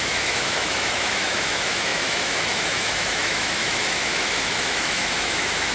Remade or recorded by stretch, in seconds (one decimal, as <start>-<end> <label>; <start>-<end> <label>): 0.0-5.7 remade